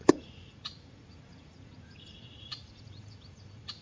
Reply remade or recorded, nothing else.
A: remade